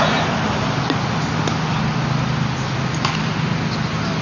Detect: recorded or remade recorded